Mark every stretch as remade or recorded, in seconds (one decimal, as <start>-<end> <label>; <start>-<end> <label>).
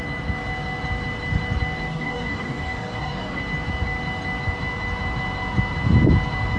0.0-1.9 recorded; 1.9-3.4 remade; 3.4-6.6 recorded